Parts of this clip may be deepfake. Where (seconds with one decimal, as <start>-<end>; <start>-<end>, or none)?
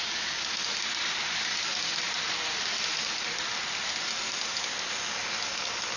none